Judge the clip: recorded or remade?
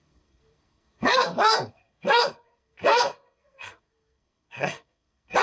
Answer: remade